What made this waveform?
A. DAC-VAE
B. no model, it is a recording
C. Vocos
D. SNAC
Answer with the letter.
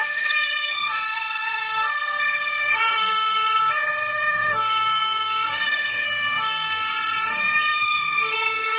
D